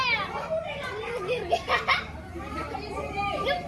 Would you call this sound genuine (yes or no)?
no